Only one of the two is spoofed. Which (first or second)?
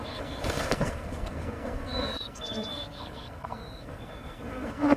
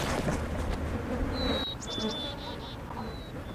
first